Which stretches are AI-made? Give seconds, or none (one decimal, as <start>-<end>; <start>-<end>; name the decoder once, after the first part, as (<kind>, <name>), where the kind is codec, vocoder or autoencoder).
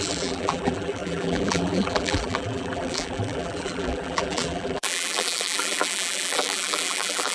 0.0-7.3 (vocoder, BigVGAN v2)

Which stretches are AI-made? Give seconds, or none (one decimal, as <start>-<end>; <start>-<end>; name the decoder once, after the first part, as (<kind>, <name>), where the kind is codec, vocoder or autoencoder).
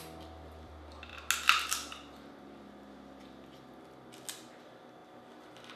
0.0-1.1 (vocoder, BigVGAN v2); 4.6-5.8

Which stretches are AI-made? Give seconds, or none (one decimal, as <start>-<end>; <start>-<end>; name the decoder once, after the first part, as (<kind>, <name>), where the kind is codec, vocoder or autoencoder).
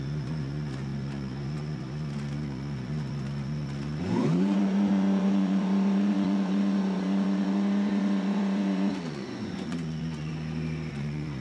0.0-10.3 (vocoder, Vocos); 10.9-11.4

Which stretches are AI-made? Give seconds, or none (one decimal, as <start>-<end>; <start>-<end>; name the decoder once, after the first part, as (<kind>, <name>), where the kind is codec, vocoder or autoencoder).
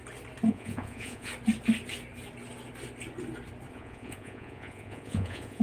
0.5-1.3 (vocoder, Vocos); 3.7-5.6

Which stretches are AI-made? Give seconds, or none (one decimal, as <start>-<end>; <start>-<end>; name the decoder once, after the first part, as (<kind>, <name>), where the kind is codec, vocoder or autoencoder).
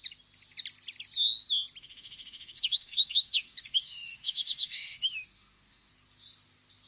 1.8-5.9 (autoencoder, DAC-VAE)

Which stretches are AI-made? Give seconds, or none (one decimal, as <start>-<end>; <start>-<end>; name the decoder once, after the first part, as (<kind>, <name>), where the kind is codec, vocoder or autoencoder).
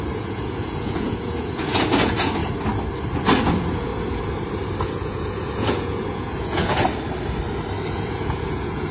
0.0-2.4 (vocoder, Vocos); 3.4-3.9; 4.8-6.9; 7.9-8.9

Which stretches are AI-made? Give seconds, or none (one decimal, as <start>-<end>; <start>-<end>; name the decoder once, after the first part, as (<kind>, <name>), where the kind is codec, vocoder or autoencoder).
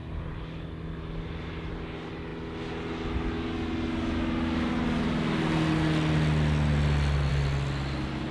none